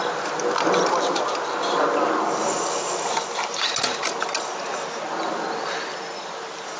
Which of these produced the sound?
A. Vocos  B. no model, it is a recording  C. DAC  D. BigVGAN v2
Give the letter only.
B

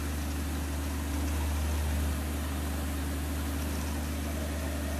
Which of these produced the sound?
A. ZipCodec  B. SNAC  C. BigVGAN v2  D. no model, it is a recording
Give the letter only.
D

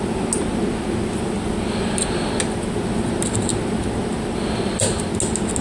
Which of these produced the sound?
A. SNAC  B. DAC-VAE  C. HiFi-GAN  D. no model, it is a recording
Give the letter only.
D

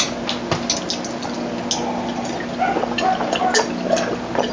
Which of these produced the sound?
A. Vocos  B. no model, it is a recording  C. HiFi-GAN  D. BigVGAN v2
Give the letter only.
B